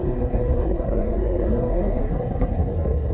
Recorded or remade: remade